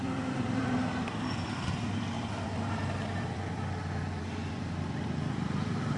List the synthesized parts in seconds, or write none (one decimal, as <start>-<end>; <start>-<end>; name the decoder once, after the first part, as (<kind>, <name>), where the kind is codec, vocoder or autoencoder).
0.6-4.2 (vocoder, BigVGAN v2)